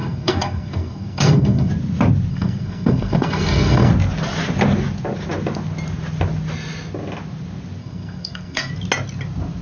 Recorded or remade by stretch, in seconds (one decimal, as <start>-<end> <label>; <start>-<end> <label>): 0.0-1.7 remade; 1.7-2.3 recorded; 2.3-3.9 remade; 3.9-7.8 recorded; 7.8-8.7 remade; 8.7-9.6 recorded